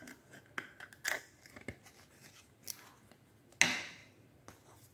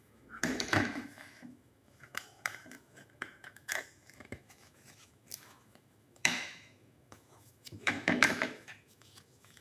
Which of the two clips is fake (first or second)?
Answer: second